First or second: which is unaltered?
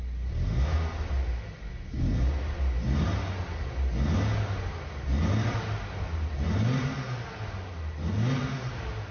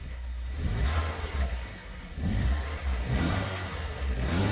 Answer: first